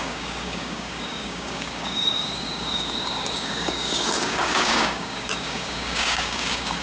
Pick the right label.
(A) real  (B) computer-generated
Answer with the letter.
B